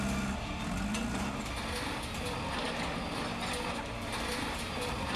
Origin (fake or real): real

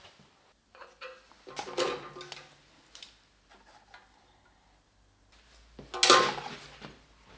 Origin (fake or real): real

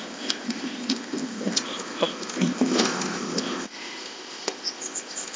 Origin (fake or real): fake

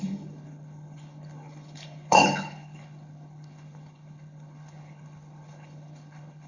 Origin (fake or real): fake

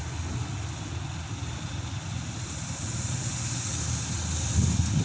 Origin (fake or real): real